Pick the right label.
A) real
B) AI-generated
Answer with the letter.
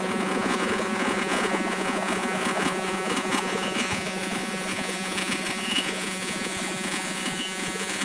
B